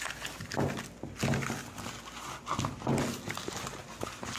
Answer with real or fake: real